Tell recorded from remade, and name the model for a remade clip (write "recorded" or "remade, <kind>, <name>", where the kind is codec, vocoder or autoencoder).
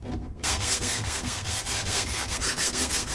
remade, codec, SNAC